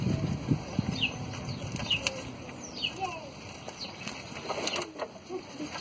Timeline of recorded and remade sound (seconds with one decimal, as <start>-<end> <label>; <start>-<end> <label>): 0.0-1.8 recorded; 1.8-2.5 remade; 2.5-5.8 recorded